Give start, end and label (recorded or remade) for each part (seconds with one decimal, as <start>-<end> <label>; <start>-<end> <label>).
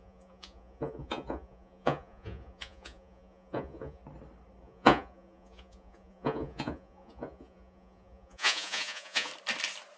0.0-4.0 remade; 4.0-4.6 recorded; 4.6-9.3 remade; 9.3-10.0 recorded